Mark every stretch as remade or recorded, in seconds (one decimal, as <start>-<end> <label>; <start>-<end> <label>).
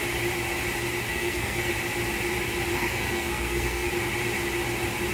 0.0-1.1 recorded; 1.1-1.7 remade; 1.7-2.7 recorded; 2.7-3.9 remade; 3.9-5.1 recorded